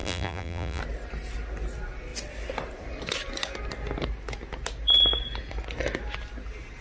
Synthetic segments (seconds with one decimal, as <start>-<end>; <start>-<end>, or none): 0.0-0.8